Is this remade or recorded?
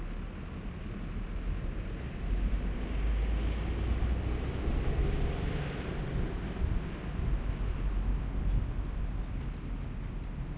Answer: recorded